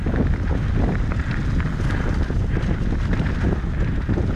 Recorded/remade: recorded